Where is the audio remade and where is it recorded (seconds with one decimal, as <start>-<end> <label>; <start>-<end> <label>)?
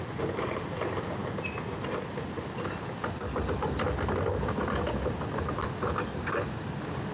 0.0-7.1 recorded